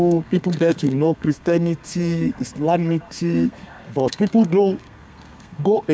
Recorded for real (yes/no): no